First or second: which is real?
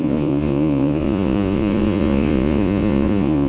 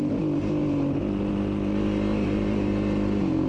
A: second